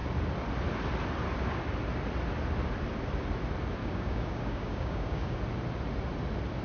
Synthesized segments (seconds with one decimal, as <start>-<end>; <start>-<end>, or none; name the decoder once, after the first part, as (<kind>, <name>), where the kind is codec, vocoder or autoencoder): 3.8-5.4 (codec, DAC)